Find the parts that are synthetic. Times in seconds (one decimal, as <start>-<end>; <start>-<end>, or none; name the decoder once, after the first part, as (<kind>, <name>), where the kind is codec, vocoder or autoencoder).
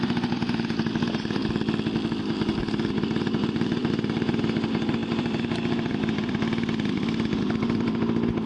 0.0-1.4 (vocoder, BigVGAN v2); 2.2-8.5